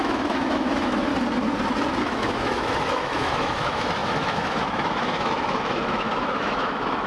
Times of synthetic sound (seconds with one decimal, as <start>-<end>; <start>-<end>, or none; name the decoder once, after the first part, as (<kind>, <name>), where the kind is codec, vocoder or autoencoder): 0.0-1.1 (autoencoder, DAC-VAE); 2.0-7.1